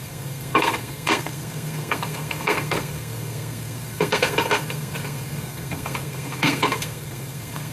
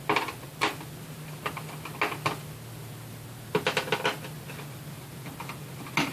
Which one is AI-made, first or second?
first